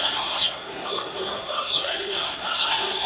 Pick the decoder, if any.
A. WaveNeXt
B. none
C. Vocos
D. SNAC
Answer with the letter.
D